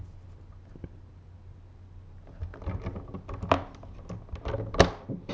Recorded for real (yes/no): yes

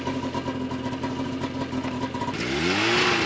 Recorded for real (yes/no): yes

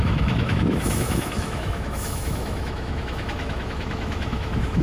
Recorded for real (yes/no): no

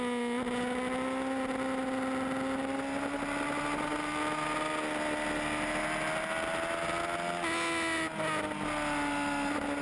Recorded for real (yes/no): yes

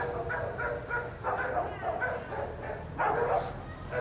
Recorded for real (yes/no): yes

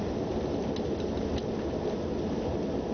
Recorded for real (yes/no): yes